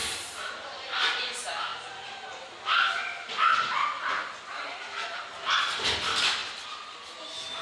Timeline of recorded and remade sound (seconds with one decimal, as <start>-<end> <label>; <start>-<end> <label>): 0.0-0.8 remade; 0.8-1.7 recorded; 1.7-2.5 remade; 2.5-7.6 recorded